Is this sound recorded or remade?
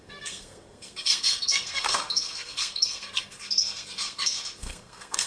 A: remade